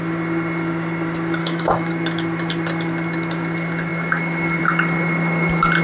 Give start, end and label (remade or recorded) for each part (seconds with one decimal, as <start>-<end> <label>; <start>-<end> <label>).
0.0-1.4 recorded; 1.4-1.9 remade; 1.9-5.8 recorded